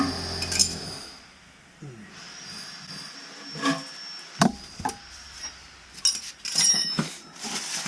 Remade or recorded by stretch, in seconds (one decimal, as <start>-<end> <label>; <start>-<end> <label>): 0.0-0.6 recorded; 0.6-1.2 remade; 1.2-6.7 recorded; 6.7-7.2 remade; 7.2-7.9 recorded